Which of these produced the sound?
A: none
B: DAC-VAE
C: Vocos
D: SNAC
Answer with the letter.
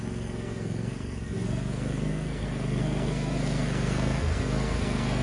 D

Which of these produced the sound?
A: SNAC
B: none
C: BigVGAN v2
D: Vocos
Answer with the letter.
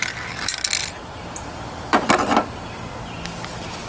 B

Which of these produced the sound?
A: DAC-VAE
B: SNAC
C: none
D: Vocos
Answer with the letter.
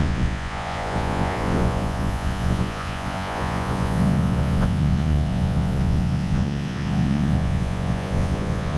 D